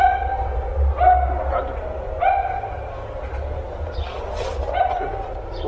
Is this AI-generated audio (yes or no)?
no